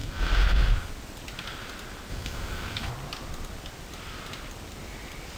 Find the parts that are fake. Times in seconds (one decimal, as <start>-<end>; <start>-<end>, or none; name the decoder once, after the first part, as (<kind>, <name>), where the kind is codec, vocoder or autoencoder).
0.0-0.9 (codec, SNAC); 2.1-2.9